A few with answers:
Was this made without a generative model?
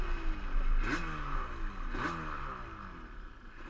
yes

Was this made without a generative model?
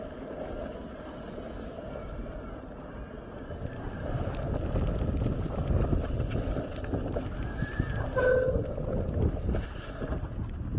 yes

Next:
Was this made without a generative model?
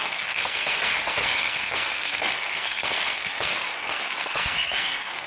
no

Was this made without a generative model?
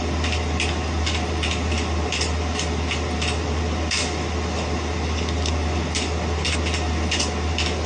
yes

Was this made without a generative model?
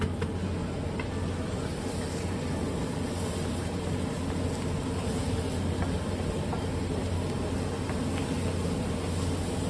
yes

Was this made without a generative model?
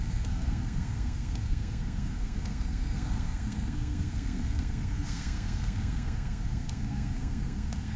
no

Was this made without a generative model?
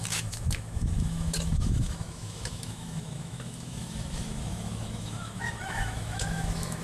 no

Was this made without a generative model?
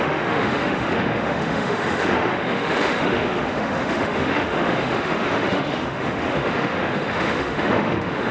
no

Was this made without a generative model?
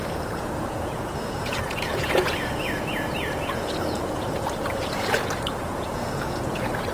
no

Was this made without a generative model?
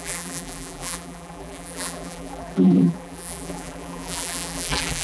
no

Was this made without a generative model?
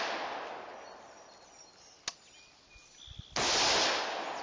yes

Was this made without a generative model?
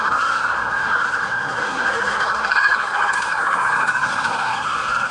no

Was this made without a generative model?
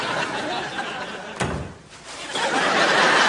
yes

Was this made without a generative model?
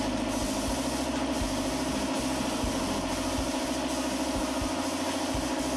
yes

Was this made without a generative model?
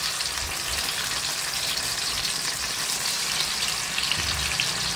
no